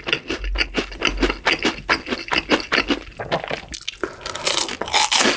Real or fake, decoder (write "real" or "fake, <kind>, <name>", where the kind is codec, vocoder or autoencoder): real